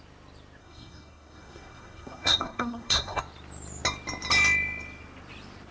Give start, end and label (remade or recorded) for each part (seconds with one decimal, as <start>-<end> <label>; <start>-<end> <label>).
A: 0.0-0.6 recorded; 0.6-3.2 remade; 3.2-5.7 recorded